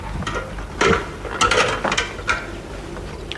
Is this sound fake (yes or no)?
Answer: no